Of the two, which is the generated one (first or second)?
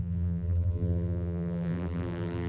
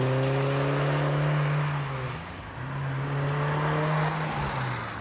first